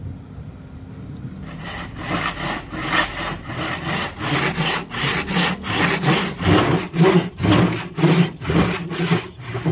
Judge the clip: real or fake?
real